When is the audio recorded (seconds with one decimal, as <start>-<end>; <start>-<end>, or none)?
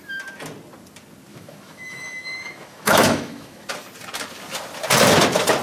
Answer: 0.0-1.3; 3.7-5.6